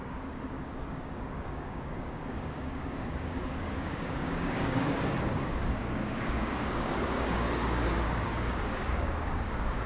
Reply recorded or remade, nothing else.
remade